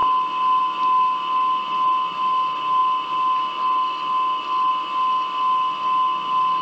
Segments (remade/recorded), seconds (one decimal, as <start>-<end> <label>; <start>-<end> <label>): 0.0-6.6 recorded

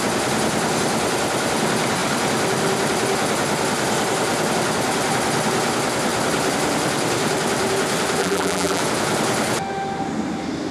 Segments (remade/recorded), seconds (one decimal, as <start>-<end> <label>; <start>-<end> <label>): 0.0-8.2 recorded; 8.2-8.8 remade; 8.8-10.7 recorded

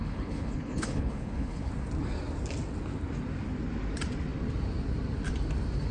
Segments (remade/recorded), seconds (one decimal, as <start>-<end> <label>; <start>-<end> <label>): 0.0-1.7 remade; 1.7-5.9 recorded

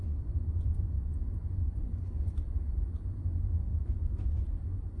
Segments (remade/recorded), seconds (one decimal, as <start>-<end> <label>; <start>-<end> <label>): 0.0-3.0 remade; 3.0-3.7 recorded; 3.7-5.0 remade